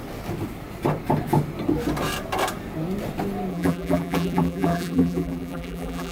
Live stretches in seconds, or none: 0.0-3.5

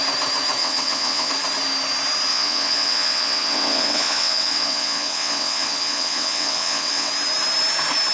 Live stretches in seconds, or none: 0.0-0.6; 1.3-2.3; 7.1-8.1

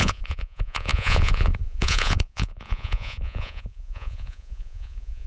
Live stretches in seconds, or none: none

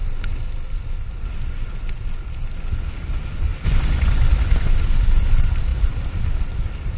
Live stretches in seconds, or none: 0.0-3.5; 4.7-7.0

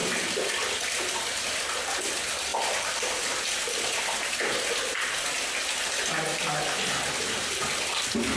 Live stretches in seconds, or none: 1.0-2.5; 4.4-7.4